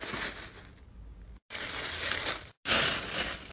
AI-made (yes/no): no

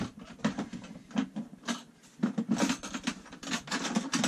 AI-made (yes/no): no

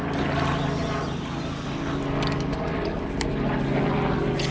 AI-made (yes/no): no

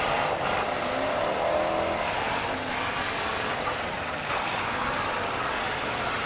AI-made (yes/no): no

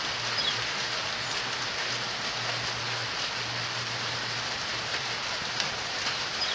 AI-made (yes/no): no